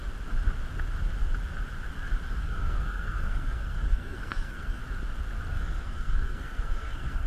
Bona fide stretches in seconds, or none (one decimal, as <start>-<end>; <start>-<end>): 0.0-2.4; 4.8-5.5